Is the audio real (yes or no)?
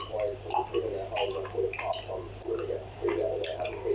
no